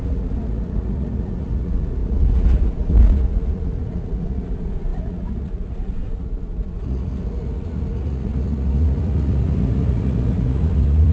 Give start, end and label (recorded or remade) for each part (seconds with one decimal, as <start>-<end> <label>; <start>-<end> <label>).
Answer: 0.0-11.1 remade